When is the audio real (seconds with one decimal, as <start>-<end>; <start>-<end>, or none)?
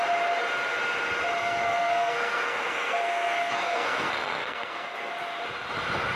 0.0-1.4; 5.1-6.2